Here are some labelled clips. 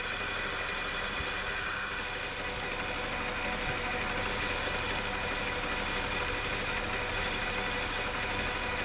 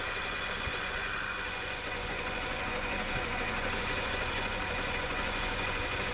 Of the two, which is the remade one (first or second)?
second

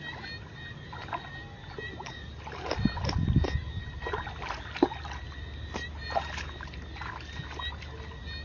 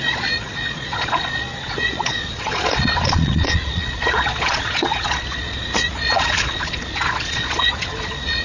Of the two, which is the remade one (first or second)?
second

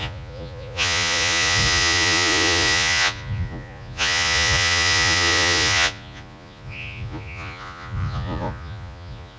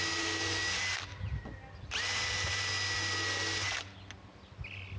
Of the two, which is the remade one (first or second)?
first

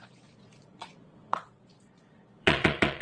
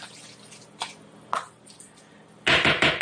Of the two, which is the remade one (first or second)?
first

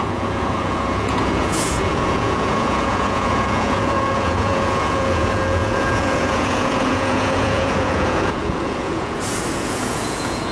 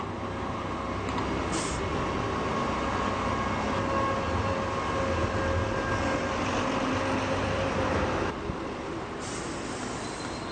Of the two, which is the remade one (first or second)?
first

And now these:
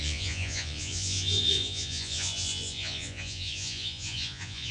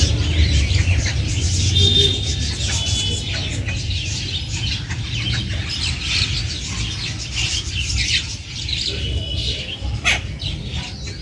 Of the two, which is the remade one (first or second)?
first